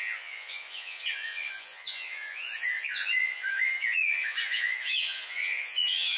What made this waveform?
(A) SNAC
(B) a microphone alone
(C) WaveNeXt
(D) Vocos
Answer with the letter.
D